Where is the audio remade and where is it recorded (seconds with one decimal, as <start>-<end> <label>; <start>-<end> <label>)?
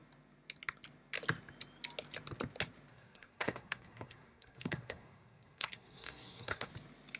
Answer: 0.0-2.9 recorded; 2.9-6.7 remade; 6.7-7.2 recorded